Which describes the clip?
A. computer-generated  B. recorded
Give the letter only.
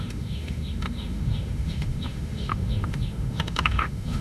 A